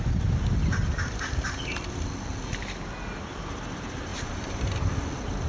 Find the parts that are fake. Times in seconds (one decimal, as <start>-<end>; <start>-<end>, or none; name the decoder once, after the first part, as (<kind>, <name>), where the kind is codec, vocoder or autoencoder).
0.6-1.5 (vocoder, BigVGAN v2); 4.1-4.7